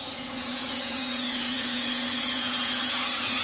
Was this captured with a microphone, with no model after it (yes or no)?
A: no